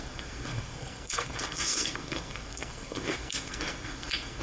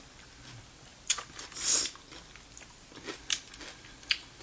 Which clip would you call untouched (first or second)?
second